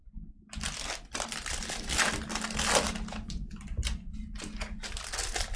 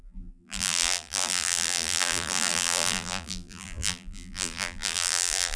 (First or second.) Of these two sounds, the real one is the first